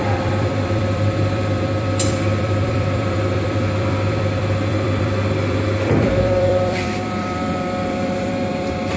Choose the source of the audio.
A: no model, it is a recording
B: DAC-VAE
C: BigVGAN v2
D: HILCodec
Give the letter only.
C